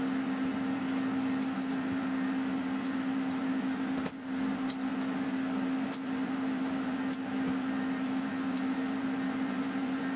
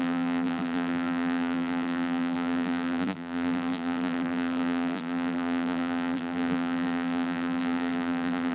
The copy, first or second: second